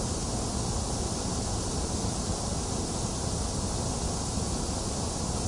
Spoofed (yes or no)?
no